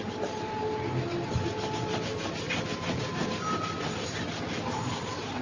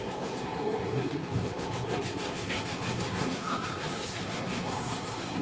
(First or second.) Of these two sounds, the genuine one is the first